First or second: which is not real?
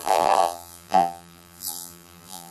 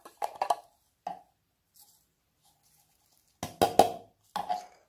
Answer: first